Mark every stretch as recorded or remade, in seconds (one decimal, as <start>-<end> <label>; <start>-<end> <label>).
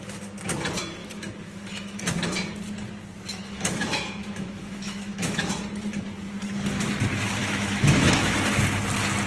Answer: 0.0-1.0 recorded; 1.0-2.0 remade; 2.0-3.3 recorded; 3.3-5.5 remade; 5.5-7.4 recorded; 7.4-8.4 remade; 8.4-9.3 recorded